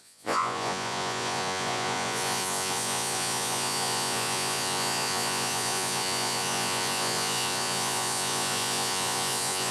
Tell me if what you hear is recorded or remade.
remade